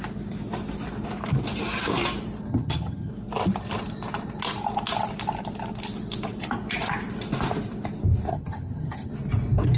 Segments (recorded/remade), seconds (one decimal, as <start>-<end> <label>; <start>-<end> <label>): 0.0-2.5 recorded; 2.5-3.1 remade; 3.1-8.3 recorded; 8.3-9.1 remade; 9.1-9.8 recorded